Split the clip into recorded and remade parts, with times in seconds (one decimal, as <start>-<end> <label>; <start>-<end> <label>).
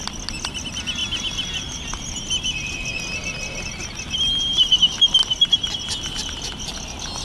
0.0-7.2 recorded